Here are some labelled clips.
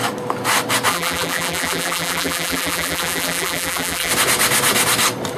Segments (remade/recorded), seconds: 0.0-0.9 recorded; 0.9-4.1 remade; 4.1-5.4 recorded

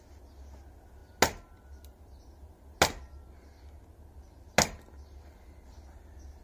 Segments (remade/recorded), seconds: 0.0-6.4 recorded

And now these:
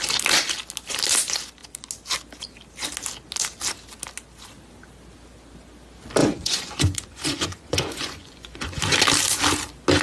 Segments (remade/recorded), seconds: 0.0-6.2 recorded; 6.2-8.8 remade; 8.8-10.0 recorded

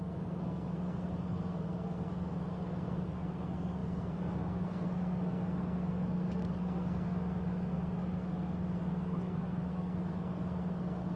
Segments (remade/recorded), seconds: 0.0-11.2 remade

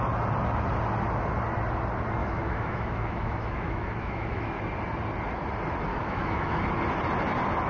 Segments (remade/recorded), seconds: 0.0-2.2 recorded; 2.2-4.6 remade; 4.6-5.9 recorded; 5.9-6.6 remade; 6.6-7.7 recorded

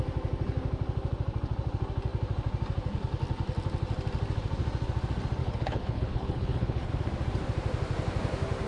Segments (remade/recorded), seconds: 0.0-5.4 recorded; 5.4-6.9 remade; 6.9-8.7 recorded

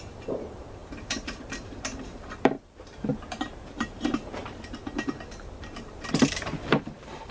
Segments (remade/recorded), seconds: 0.0-4.4 remade; 4.4-5.6 recorded; 5.6-7.3 remade

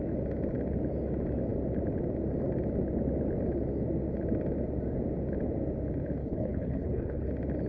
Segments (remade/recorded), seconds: 0.0-6.2 recorded; 6.2-7.3 remade; 7.3-7.7 recorded